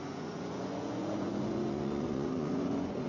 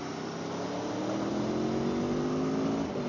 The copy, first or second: first